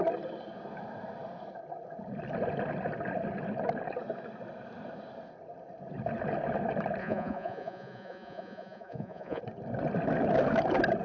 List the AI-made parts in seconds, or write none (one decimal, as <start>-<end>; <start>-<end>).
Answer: 7.0-9.4